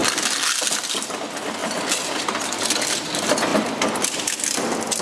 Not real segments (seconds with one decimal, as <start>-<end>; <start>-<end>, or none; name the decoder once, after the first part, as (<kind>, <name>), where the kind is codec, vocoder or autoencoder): none